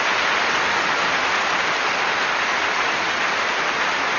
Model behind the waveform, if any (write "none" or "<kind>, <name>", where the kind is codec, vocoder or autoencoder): none